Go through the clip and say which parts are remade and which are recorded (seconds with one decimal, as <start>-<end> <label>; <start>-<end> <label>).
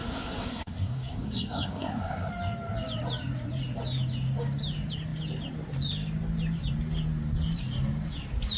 0.0-2.3 remade; 2.3-8.6 recorded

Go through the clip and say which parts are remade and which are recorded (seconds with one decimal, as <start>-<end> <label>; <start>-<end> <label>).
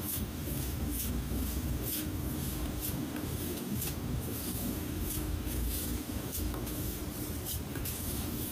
0.0-7.0 remade; 7.0-7.7 recorded; 7.7-8.5 remade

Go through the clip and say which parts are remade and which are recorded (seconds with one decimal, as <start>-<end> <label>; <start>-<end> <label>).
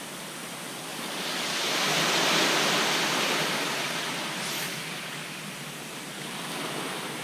0.0-0.9 recorded; 0.9-1.7 remade; 1.7-4.7 recorded; 4.7-5.4 remade; 5.4-7.2 recorded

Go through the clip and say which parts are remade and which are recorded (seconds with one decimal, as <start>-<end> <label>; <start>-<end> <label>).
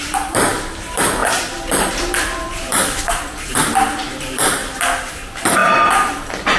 0.0-4.6 remade; 4.6-5.1 recorded; 5.1-6.6 remade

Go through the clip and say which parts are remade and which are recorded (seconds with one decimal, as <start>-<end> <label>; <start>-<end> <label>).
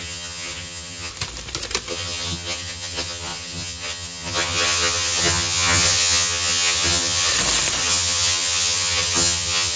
0.0-1.1 remade; 1.1-1.9 recorded; 1.9-7.3 remade; 7.3-7.8 recorded; 7.8-9.8 remade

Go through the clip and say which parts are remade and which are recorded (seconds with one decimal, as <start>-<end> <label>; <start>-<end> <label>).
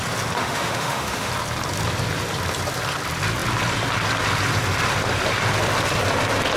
0.0-0.4 recorded; 0.4-1.3 remade; 1.3-6.6 recorded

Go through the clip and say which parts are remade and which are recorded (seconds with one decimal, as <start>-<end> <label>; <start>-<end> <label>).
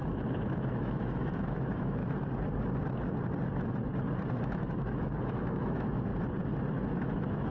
0.0-2.0 remade; 2.0-3.4 recorded; 3.4-3.8 remade; 3.8-4.4 recorded; 4.4-6.1 remade; 6.1-6.9 recorded; 6.9-7.5 remade